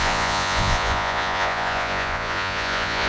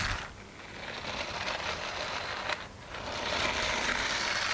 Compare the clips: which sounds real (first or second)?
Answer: second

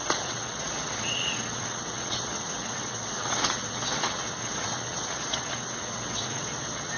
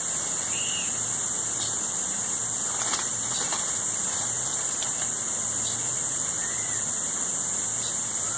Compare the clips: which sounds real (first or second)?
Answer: second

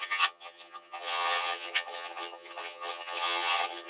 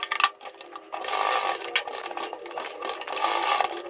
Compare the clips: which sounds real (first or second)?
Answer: second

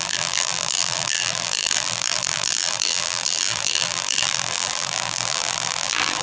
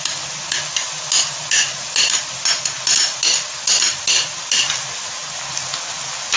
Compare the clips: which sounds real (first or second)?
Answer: second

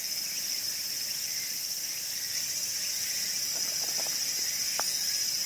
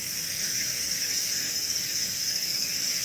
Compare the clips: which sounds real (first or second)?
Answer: first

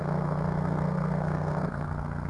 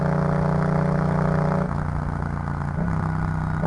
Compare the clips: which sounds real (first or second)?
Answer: second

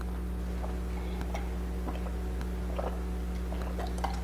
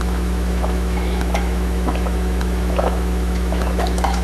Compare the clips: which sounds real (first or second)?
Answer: first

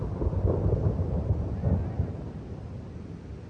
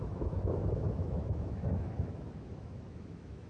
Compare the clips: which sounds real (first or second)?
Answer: first